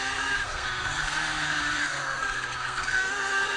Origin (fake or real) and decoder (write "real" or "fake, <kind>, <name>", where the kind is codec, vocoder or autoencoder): fake, codec, SNAC